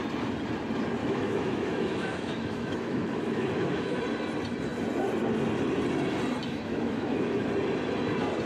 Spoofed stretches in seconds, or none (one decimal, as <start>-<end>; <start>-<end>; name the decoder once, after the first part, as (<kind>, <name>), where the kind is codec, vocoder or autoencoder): 1.0-4.0 (autoencoder, DAC-VAE); 6.4-7.5